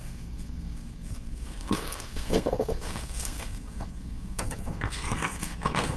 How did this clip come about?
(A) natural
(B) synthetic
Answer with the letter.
B